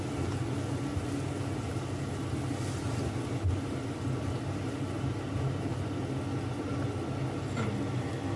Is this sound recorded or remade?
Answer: recorded